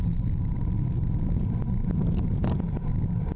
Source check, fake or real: real